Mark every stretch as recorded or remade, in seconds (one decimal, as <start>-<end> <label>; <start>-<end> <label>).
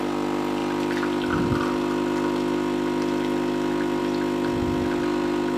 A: 0.0-5.6 recorded